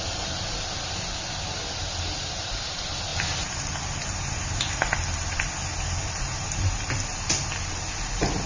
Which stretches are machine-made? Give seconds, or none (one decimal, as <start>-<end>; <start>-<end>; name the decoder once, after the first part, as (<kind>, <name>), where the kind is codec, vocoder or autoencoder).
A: none